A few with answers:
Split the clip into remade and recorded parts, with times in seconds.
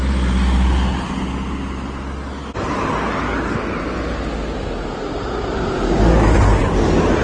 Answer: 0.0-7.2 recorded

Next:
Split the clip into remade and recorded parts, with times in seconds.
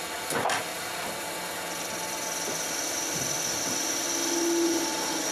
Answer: 0.0-0.7 recorded; 0.7-1.5 remade; 1.5-5.3 recorded